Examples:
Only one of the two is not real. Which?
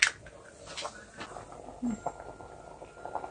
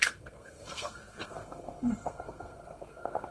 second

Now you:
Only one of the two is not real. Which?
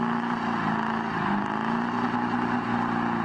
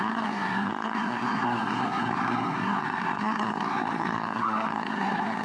second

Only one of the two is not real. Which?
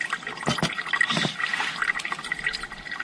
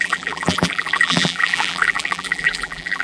second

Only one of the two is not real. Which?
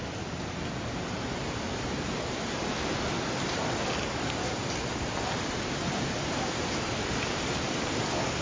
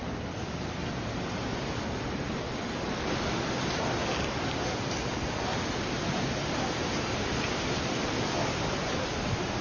first